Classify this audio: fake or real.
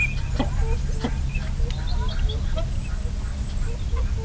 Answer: real